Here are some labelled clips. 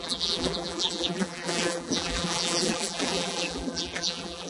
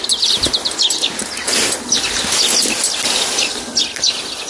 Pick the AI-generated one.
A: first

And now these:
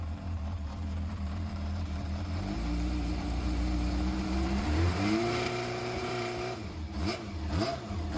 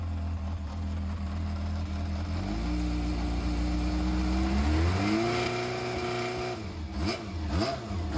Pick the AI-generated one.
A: first